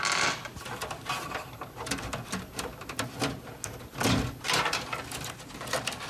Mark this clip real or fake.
real